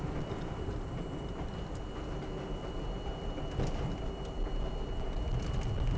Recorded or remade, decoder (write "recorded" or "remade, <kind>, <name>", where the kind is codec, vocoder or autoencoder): recorded